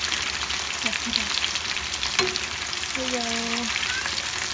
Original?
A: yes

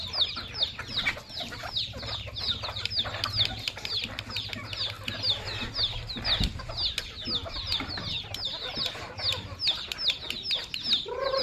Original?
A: yes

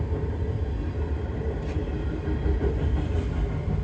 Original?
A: yes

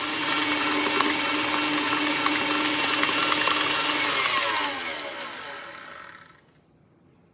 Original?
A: yes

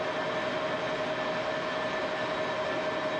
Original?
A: yes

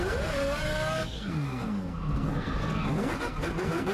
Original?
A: no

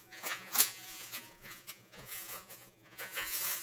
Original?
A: no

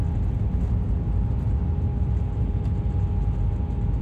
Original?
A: yes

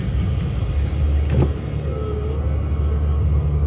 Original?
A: yes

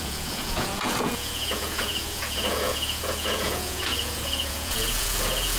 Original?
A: no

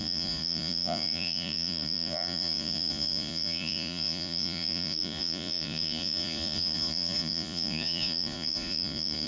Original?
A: no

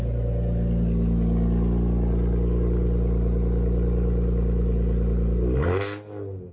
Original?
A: yes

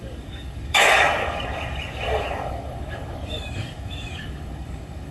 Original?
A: no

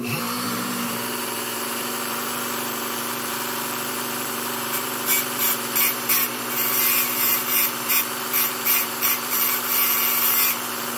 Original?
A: no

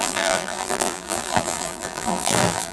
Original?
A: no